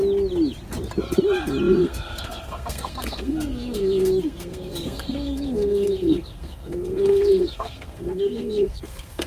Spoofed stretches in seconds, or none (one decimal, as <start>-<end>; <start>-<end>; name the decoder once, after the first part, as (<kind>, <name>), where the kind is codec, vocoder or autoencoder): 1.8-9.3 (codec, SNAC)